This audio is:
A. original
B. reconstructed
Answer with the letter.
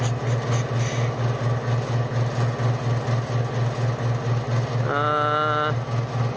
A